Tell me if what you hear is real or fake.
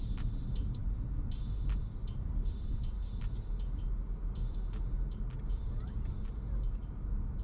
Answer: real